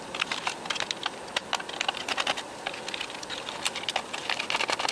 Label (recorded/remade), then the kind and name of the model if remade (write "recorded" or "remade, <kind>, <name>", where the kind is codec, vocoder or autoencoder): recorded